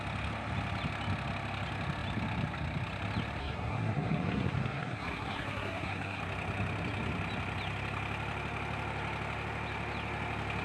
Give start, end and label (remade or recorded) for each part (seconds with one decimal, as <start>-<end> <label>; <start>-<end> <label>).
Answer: 0.0-3.4 recorded; 3.4-6.2 remade; 6.2-10.6 recorded